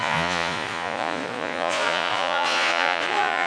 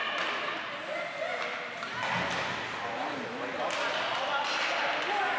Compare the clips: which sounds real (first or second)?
second